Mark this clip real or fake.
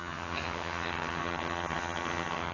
fake